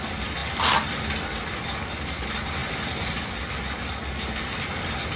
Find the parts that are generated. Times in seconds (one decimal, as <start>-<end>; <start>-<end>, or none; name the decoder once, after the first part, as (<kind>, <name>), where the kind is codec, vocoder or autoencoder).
none